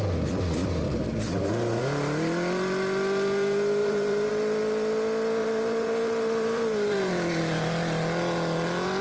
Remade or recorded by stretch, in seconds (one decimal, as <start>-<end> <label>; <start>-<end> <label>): 0.0-0.6 recorded; 0.6-1.8 remade; 1.8-3.8 recorded; 3.8-4.3 remade; 4.3-5.4 recorded; 5.4-7.1 remade; 7.1-9.0 recorded